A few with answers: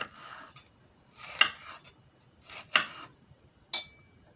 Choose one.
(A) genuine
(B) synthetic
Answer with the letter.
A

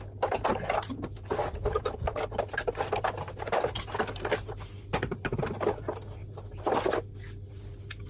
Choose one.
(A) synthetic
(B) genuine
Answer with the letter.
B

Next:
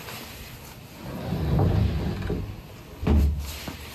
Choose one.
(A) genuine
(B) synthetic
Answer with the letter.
A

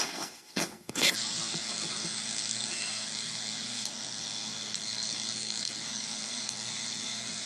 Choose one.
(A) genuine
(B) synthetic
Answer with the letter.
B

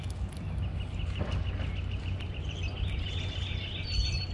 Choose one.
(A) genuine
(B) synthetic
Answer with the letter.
A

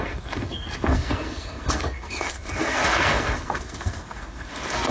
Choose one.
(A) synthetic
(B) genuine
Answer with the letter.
A